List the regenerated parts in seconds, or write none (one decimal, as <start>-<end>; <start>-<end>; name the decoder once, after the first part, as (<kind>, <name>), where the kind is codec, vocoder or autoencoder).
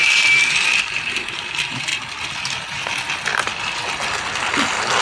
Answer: 0.0-1.9 (vocoder, BigVGAN v2)